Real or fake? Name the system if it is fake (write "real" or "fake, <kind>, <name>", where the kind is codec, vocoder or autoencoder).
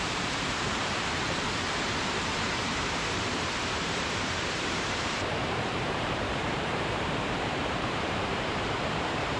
fake, vocoder, BigVGAN v2